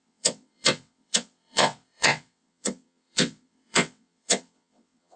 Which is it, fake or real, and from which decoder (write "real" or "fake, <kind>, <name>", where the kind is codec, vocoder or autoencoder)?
fake, vocoder, WaveNeXt